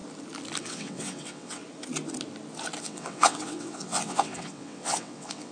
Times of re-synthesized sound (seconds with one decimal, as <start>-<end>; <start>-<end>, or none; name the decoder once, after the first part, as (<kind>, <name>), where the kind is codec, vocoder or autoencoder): 0.6-1.6 (vocoder, WaveNeXt); 2.8-5.5